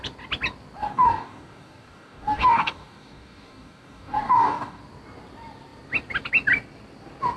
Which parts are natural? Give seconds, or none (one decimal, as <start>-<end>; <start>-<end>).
0.0-0.8; 4.8-7.4

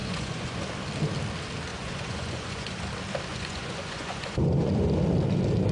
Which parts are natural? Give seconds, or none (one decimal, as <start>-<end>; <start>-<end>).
0.6-1.7; 2.8-3.3; 4.7-5.7

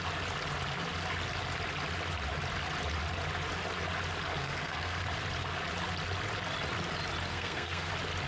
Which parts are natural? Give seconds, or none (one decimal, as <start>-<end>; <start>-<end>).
0.0-4.4; 5.0-7.3; 7.9-8.3